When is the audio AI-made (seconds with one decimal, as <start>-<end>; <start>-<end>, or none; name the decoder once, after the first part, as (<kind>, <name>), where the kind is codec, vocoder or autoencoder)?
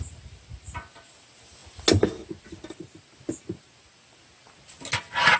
none